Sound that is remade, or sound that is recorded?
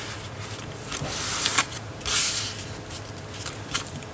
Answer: recorded